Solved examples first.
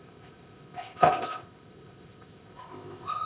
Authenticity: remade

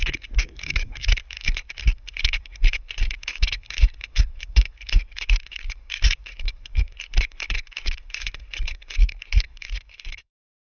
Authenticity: remade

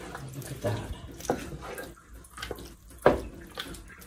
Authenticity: recorded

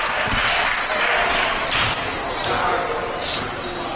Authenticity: recorded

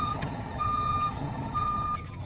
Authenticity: remade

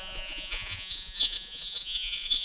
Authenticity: remade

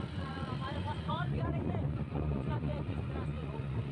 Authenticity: remade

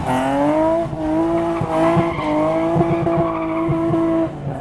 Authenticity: recorded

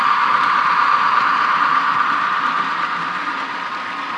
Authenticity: recorded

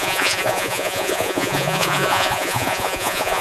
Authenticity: remade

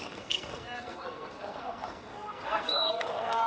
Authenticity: remade